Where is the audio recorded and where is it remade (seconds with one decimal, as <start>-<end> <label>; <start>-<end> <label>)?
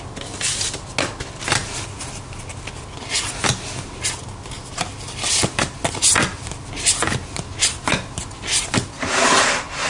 0.0-9.9 recorded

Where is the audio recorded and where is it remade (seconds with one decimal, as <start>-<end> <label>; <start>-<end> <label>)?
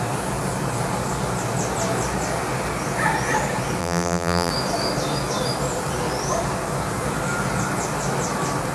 0.0-3.8 recorded; 3.8-4.5 remade; 4.5-8.7 recorded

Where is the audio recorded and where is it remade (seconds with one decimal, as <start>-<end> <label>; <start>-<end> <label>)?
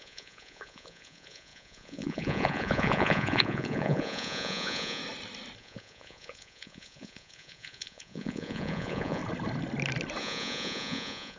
0.0-5.0 remade; 5.0-5.6 recorded; 5.6-9.2 remade; 9.2-10.2 recorded; 10.2-11.4 remade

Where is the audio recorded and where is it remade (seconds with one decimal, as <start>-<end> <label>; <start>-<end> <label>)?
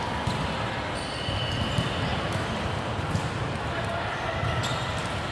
0.0-2.1 recorded; 2.1-3.1 remade; 3.1-5.3 recorded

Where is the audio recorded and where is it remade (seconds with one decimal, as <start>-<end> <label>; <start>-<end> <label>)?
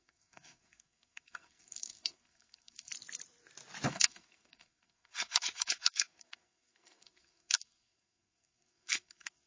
0.0-2.9 remade; 2.9-3.9 recorded; 3.9-9.5 remade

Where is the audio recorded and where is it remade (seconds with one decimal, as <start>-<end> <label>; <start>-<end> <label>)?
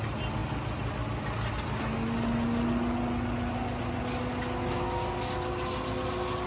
0.0-6.5 recorded